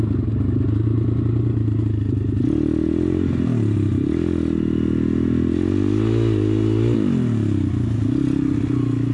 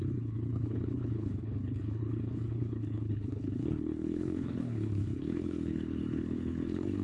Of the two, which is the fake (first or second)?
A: second